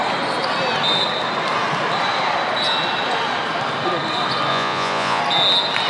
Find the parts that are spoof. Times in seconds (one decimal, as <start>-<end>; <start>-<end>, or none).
4.5-5.2